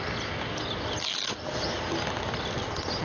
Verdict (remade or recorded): recorded